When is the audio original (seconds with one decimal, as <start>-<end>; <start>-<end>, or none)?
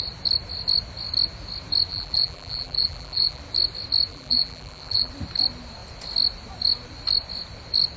0.0-1.9; 3.4-4.1; 5.1-8.0